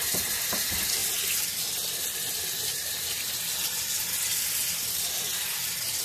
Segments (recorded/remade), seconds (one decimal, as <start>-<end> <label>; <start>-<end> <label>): 0.0-6.0 recorded